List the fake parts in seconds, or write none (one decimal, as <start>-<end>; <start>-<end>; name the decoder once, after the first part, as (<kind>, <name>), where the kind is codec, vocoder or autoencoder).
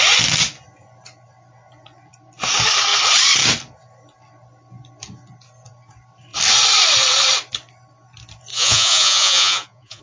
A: 8.5-10.0 (vocoder, Vocos)